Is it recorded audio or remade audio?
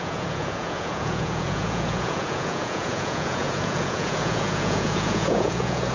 remade